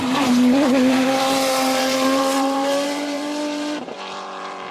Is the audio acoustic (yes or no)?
no